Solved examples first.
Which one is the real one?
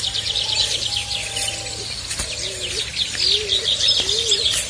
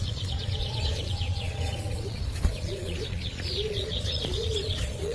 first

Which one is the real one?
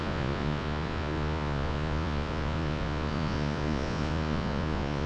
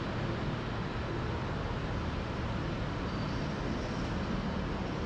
second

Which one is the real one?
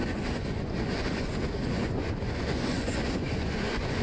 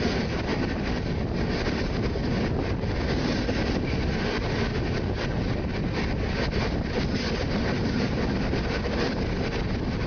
second